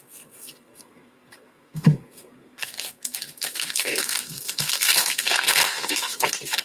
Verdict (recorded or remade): remade